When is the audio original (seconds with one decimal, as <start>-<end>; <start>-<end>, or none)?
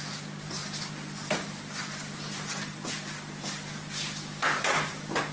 0.0-5.3